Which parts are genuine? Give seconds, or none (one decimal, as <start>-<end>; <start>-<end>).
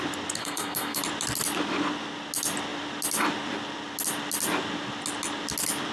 0.0-0.4; 1.0-5.9